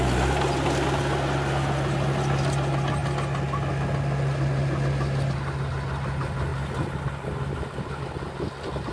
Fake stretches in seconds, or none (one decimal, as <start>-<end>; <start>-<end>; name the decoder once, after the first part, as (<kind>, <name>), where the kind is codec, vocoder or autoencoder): none